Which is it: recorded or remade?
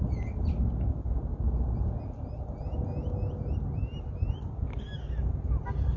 recorded